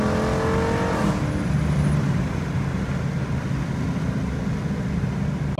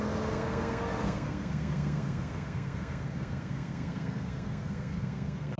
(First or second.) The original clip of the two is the first